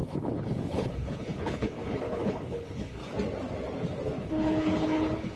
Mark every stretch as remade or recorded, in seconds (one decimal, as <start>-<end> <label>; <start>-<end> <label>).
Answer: 0.0-3.0 remade; 3.0-4.2 recorded; 4.2-5.4 remade